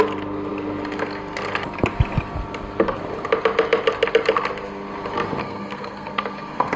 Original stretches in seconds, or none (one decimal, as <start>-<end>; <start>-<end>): 0.0-5.4